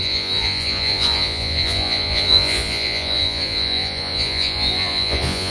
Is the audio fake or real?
fake